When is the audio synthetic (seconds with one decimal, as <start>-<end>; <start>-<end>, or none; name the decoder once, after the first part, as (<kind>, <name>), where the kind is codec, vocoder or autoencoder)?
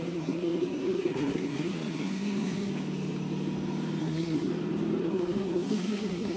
0.0-2.7 (codec, SNAC); 4.0-4.5; 5.0-6.4